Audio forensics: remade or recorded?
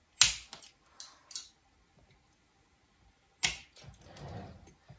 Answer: recorded